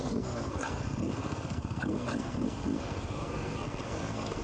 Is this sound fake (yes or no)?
yes